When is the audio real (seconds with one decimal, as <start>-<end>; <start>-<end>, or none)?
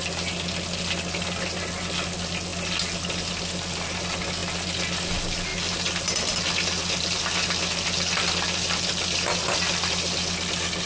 0.0-10.9